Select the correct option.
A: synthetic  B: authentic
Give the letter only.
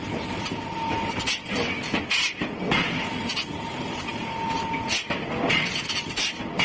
B